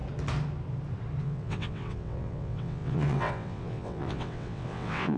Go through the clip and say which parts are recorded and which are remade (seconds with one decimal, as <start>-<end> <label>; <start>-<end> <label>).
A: 0.0-1.2 recorded; 1.2-5.2 remade

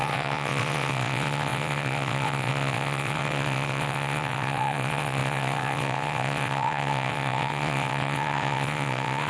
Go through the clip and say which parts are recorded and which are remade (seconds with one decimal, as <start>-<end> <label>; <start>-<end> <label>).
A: 0.0-9.3 remade

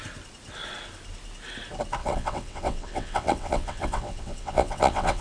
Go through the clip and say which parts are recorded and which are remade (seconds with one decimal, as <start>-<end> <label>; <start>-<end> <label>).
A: 0.0-2.0 recorded; 2.0-5.2 remade